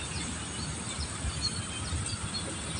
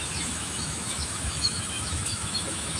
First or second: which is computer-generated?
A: second